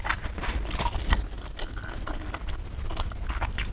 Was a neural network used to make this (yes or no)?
no